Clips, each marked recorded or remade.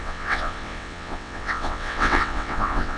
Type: remade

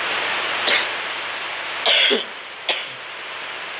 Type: recorded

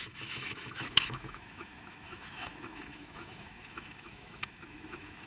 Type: remade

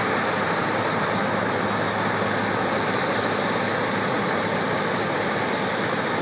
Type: recorded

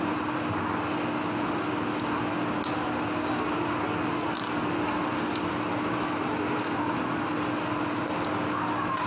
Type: recorded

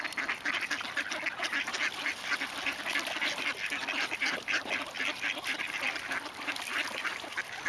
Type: recorded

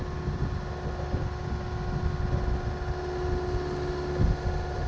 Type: recorded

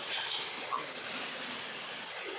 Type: recorded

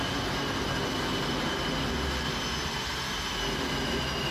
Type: recorded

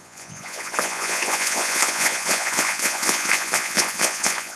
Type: remade